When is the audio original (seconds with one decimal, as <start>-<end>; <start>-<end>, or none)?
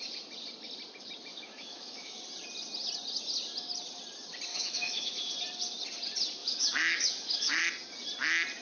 0.0-1.3; 2.2-4.5; 5.3-6.4; 7.6-8.6